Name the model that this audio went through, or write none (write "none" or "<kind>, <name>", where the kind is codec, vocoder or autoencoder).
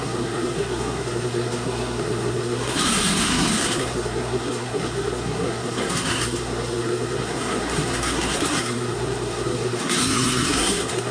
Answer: codec, SNAC